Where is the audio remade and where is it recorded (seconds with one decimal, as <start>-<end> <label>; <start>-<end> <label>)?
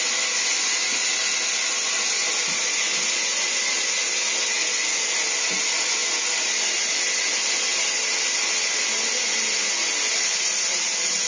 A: 0.0-11.3 recorded